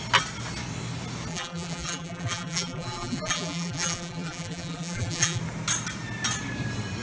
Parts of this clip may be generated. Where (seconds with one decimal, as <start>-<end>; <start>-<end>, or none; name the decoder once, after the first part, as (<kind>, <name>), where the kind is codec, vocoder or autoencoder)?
1.3-5.4 (vocoder, BigVGAN v2)